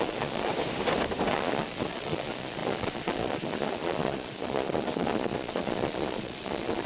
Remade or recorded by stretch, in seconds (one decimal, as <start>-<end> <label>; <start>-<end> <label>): 0.0-0.5 remade; 0.5-1.3 recorded; 1.3-6.9 remade